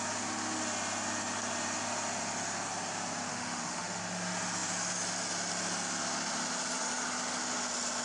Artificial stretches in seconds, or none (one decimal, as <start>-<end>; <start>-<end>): 3.3-4.0